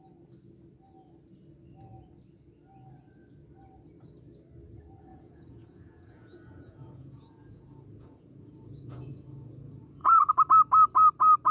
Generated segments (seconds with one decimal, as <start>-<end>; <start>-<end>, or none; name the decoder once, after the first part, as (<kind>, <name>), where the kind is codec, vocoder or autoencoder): 5.1-10.3 (vocoder, Vocos)